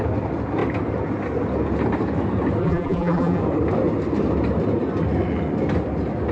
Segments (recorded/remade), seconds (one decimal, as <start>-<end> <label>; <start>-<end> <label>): 0.0-2.6 recorded; 2.6-3.4 remade; 3.4-6.3 recorded